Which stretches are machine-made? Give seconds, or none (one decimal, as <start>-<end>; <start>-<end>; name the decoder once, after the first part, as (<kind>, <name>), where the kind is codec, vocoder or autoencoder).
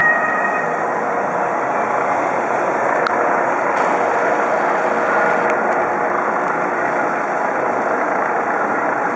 none